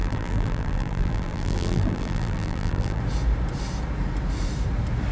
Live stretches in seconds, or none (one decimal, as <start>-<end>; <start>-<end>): 3.0-5.1